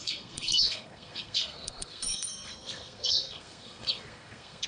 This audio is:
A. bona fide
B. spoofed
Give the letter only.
B